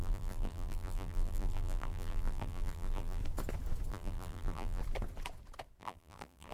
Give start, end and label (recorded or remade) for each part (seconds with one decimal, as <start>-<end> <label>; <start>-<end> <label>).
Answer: 0.0-3.2 remade; 3.2-3.9 recorded; 3.9-4.8 remade; 4.8-5.8 recorded; 5.8-6.5 remade